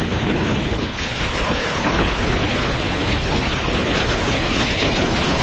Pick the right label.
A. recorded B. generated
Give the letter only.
B